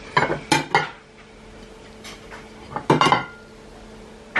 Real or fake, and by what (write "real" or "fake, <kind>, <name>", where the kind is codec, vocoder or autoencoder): real